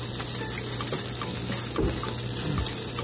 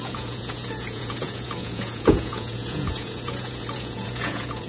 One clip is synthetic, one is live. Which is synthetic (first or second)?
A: second